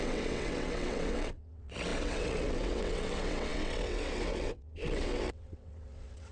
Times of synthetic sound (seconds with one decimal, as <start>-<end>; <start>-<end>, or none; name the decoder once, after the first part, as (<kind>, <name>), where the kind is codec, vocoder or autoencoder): 0.0-6.3 (vocoder, WaveNeXt)